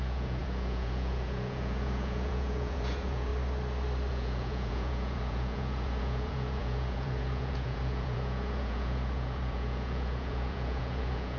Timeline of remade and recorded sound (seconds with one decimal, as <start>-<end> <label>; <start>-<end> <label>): 0.0-3.3 remade; 3.3-4.1 recorded; 4.1-11.4 remade